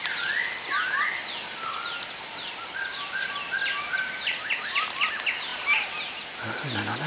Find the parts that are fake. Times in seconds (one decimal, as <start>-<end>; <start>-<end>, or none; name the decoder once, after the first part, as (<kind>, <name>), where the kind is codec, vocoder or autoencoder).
none